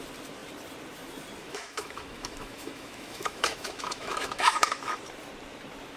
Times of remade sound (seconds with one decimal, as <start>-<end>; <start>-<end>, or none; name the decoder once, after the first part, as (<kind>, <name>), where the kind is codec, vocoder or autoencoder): 1.4-5.0 (autoencoder, DAC-VAE)